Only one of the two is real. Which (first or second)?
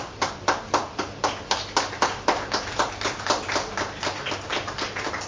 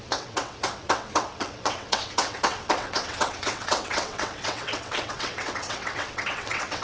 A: first